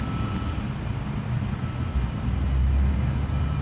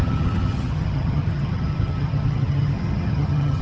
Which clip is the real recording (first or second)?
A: first